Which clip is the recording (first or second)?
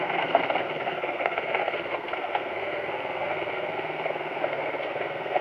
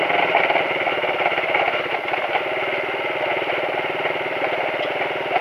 second